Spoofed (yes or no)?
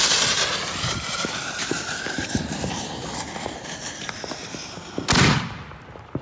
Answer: no